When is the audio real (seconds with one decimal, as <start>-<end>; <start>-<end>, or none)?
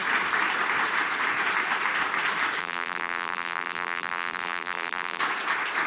0.0-2.6; 5.2-5.9